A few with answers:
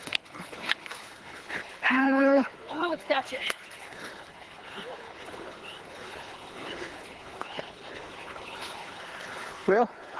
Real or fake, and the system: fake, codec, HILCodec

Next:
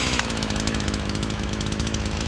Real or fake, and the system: fake, autoencoder, DAC-VAE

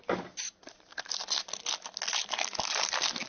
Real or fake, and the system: real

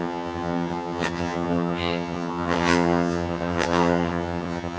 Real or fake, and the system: fake, vocoder, HiFi-GAN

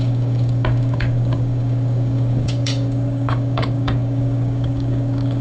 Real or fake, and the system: fake, codec, DAC